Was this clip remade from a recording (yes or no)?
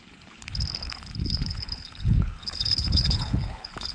yes